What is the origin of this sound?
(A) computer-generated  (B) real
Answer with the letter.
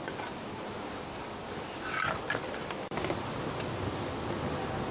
B